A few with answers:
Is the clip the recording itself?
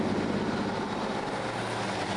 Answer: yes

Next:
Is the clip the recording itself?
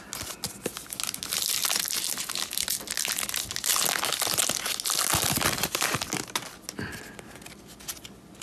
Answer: yes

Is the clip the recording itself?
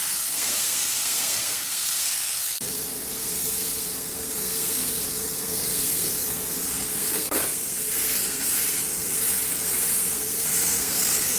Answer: no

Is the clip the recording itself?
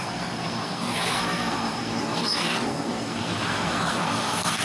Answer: no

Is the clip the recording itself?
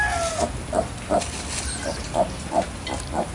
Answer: yes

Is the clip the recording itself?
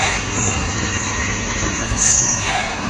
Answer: no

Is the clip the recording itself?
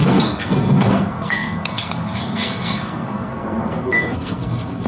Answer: no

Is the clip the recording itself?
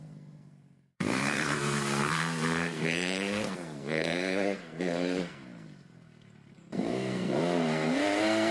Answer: no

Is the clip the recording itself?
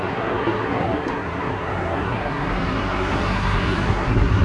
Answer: no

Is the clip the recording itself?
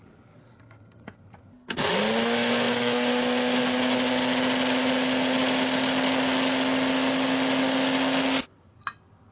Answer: yes